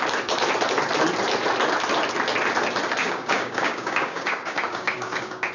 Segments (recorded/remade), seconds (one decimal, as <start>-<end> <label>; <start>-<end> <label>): 0.0-3.0 recorded; 3.0-5.5 remade